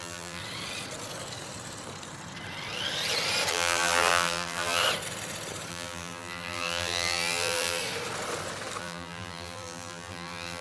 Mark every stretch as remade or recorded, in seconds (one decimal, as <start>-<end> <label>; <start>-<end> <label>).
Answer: 0.0-0.4 remade; 0.4-3.5 recorded; 3.5-4.8 remade; 4.8-5.7 recorded; 5.7-7.8 remade; 7.8-8.8 recorded; 8.8-10.6 remade